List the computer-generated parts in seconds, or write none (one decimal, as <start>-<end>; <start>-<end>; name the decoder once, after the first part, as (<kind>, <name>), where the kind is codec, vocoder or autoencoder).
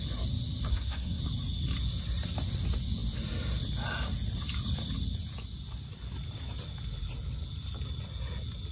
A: 0.7-1.2 (codec, SNAC)